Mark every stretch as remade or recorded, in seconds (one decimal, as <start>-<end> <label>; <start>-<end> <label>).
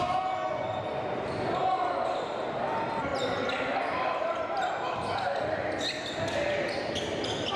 0.0-7.6 recorded